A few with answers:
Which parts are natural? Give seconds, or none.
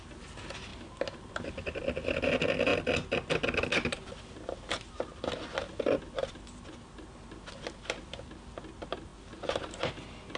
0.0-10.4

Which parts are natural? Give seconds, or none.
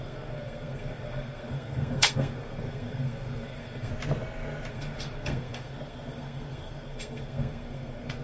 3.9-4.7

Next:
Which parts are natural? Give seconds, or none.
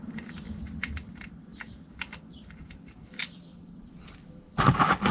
0.0-5.1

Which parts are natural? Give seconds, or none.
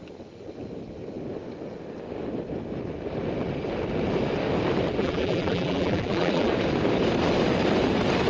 0.0-5.0; 6.5-8.3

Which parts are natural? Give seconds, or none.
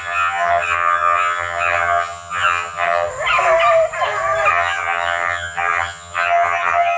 3.1-4.5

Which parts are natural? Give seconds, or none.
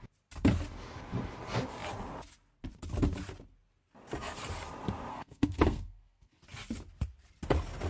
0.0-5.1; 6.4-7.9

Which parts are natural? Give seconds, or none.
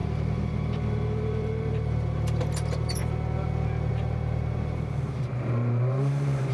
3.0-3.9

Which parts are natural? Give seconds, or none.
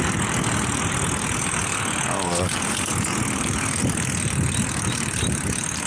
0.0-5.9